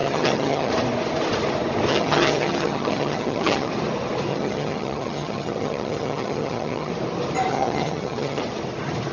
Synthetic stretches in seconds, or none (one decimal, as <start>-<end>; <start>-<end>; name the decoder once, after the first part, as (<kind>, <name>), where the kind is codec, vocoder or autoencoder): 0.0-0.7 (vocoder, HiFi-GAN); 1.9-3.7; 4.3-6.9; 7.5-8.4

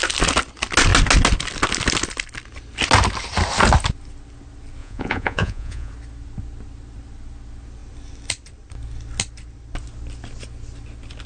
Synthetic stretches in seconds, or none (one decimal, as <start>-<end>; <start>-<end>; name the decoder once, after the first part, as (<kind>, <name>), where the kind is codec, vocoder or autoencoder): 4.8-5.9 (vocoder, Vocos)

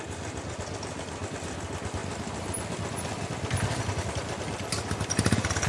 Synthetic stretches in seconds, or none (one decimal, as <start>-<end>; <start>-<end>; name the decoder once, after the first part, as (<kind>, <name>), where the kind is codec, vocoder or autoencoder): none

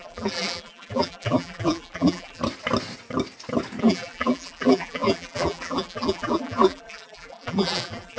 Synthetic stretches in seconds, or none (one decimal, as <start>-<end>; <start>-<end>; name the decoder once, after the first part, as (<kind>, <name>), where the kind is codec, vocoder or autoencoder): 0.0-2.4 (vocoder, BigVGAN v2); 3.8-8.2

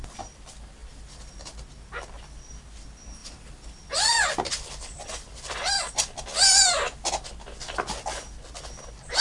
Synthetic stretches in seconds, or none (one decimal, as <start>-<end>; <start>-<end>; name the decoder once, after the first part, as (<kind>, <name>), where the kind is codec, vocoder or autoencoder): 3.2-5.7 (vocoder, BigVGAN v2)

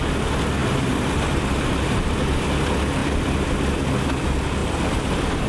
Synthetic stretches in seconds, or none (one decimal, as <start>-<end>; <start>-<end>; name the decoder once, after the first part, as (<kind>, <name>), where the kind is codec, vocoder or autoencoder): 0.6-2.2 (vocoder, BigVGAN v2); 4.6-5.1

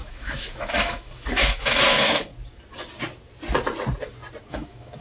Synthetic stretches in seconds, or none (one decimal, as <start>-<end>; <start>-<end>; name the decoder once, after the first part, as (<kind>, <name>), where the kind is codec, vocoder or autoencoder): 0.0-2.3 (autoencoder, DAC-VAE); 4.5-5.0

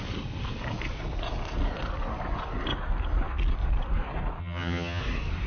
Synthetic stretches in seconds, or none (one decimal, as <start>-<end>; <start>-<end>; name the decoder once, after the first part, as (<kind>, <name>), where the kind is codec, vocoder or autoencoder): 4.4-5.0 (vocoder, HiFi-GAN)